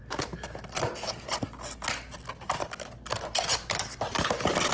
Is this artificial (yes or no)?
no